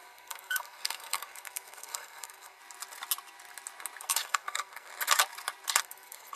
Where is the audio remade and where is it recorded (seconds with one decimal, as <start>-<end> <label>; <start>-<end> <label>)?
0.0-2.6 remade; 2.6-4.0 recorded; 4.0-4.9 remade; 4.9-5.8 recorded; 5.8-6.4 remade